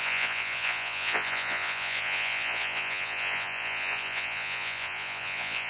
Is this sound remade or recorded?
remade